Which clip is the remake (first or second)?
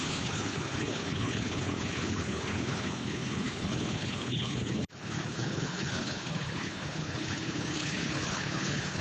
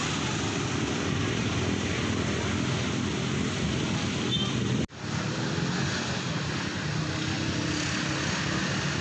first